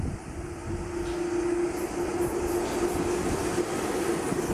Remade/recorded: recorded